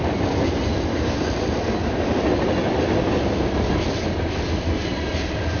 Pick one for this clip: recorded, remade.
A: recorded